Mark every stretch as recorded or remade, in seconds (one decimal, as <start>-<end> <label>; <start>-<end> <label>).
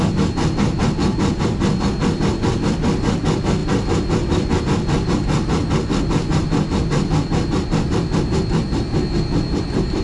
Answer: 0.0-10.0 recorded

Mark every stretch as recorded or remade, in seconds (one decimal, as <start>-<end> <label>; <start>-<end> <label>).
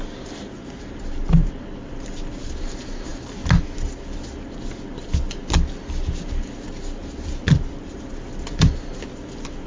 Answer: 0.0-9.7 recorded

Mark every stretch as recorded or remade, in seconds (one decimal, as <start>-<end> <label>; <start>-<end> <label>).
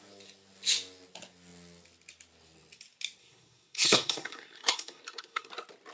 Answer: 0.0-3.2 recorded; 3.2-5.5 remade; 5.5-5.9 recorded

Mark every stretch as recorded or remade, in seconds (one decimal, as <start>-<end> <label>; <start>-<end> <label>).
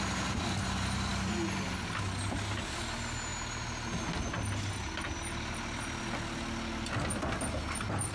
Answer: 0.0-8.1 recorded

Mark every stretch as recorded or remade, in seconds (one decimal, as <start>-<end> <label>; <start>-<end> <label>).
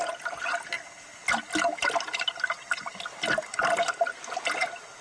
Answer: 0.0-5.0 recorded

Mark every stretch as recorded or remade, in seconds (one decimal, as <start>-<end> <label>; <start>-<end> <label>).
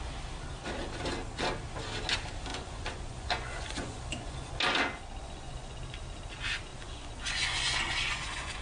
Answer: 0.0-2.5 recorded; 2.5-4.5 remade; 4.5-5.2 recorded; 5.2-5.8 remade; 5.8-6.7 recorded; 6.7-8.6 remade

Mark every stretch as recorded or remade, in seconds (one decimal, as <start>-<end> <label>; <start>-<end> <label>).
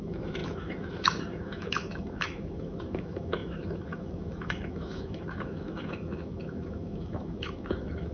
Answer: 0.0-8.1 remade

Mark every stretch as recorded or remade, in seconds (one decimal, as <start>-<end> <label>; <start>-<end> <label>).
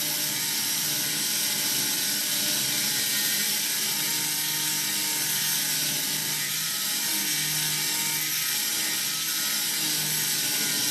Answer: 0.0-2.2 recorded; 2.2-4.1 remade; 4.1-6.2 recorded; 6.2-6.9 remade; 6.9-10.9 recorded